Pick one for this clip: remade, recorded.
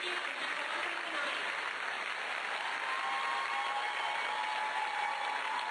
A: recorded